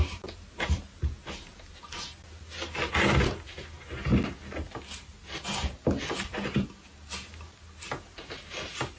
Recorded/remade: recorded